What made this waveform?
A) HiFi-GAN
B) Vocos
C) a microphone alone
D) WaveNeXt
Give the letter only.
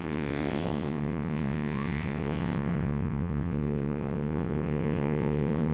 D